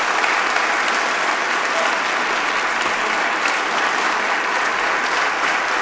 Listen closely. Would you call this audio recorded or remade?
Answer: recorded